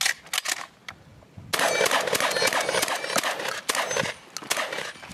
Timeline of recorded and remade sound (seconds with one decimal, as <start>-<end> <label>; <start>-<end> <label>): 0.0-5.1 recorded

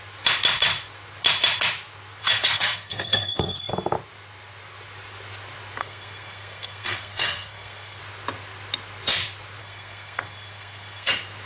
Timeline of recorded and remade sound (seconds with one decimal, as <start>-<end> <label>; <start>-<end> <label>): 0.0-2.2 recorded; 2.2-3.7 remade; 3.7-5.8 recorded; 5.8-8.0 remade; 8.0-9.6 recorded; 9.6-11.1 remade; 11.1-11.5 recorded

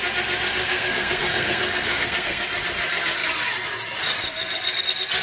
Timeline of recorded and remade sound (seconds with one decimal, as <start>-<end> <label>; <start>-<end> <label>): 0.0-0.6 recorded; 0.6-2.4 remade; 2.4-5.2 recorded